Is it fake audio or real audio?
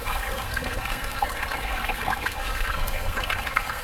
fake